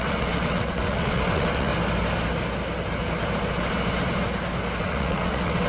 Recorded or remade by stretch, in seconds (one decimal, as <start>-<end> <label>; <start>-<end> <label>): 0.0-1.7 remade; 1.7-4.8 recorded; 4.8-5.7 remade